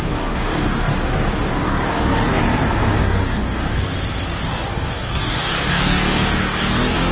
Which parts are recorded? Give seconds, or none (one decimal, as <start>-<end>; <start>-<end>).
0.9-1.5; 2.4-3.0; 3.9-4.4